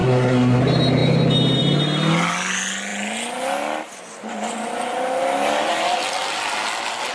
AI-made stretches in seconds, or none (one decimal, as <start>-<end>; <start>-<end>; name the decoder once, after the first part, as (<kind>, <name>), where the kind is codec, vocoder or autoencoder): 0.0-0.6 (codec, SNAC)